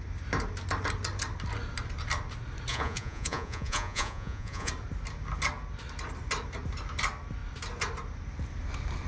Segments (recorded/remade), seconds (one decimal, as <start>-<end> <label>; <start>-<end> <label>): 0.0-2.7 recorded; 2.7-4.7 remade; 4.7-9.1 recorded